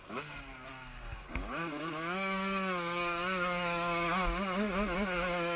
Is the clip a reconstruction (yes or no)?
yes